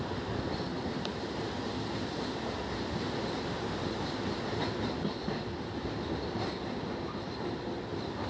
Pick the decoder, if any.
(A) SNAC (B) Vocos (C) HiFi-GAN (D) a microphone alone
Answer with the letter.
D